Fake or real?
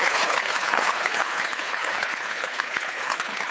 fake